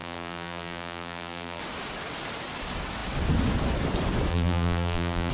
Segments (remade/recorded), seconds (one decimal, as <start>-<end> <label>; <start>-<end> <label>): 0.0-1.6 remade; 1.6-4.3 recorded; 4.3-5.3 remade